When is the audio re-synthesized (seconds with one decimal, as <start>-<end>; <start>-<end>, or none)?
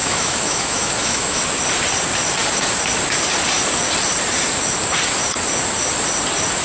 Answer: 0.0-1.4